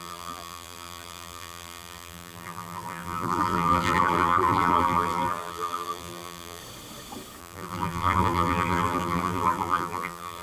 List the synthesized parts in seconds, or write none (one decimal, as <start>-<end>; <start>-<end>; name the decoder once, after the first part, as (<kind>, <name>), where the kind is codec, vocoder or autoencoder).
0.0-6.6 (vocoder, BigVGAN v2); 7.4-10.4